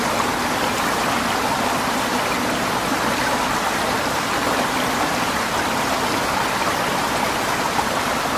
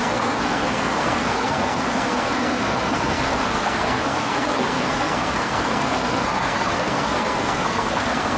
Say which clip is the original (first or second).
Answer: first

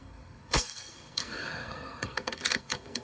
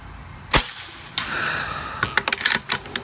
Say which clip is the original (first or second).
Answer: second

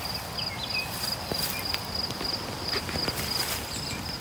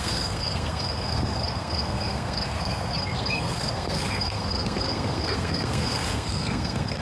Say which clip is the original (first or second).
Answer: first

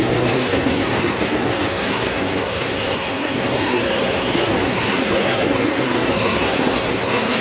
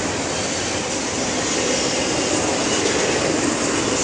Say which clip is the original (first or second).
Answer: second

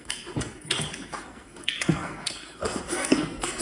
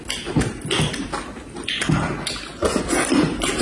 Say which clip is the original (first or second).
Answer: second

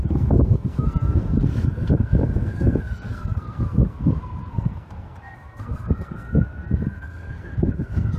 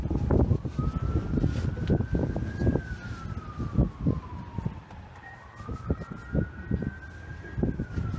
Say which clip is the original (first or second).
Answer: second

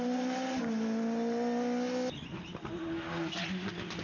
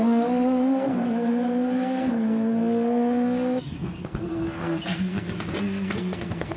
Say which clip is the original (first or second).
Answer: first